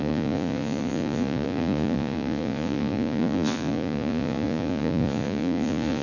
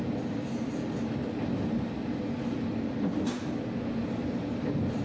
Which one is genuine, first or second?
second